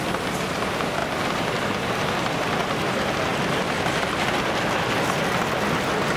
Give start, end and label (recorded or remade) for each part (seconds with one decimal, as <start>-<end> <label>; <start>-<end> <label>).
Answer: 0.0-3.3 recorded; 3.3-5.2 remade; 5.2-6.2 recorded